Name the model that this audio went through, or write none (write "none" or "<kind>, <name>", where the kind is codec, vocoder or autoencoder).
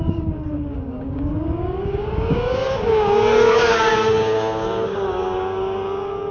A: codec, DAC